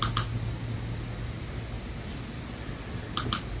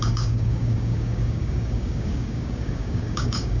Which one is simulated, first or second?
second